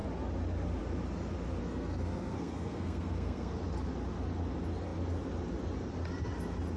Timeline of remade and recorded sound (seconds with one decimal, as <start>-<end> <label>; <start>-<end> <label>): 0.0-1.6 recorded; 1.6-3.5 remade; 3.5-6.8 recorded